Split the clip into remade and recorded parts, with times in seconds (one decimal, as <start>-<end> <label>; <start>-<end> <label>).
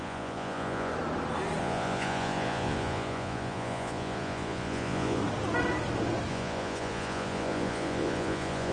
0.0-0.9 remade; 0.9-1.6 recorded; 1.6-5.2 remade; 5.2-6.3 recorded; 6.3-8.7 remade